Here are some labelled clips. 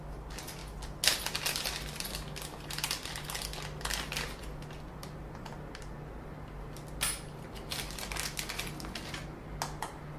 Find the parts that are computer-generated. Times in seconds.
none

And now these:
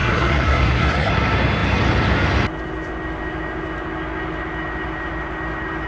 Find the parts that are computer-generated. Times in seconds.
0.0-1.1